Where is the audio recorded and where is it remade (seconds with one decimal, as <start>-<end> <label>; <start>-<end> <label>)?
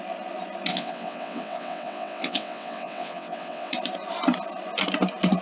0.0-0.7 recorded; 0.7-3.7 remade; 3.7-5.4 recorded